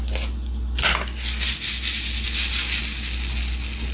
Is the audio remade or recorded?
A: recorded